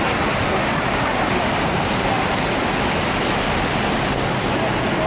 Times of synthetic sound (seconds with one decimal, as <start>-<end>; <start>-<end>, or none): 0.6-1.2